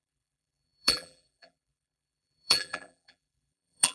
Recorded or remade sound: remade